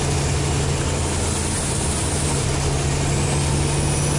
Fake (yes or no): no